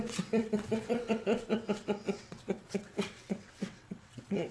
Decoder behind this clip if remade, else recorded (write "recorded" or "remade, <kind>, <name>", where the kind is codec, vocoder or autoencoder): remade, vocoder, WaveNeXt